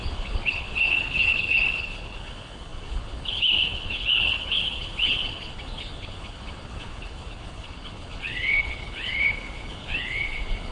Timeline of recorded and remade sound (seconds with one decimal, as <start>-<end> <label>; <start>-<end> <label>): 0.0-10.7 remade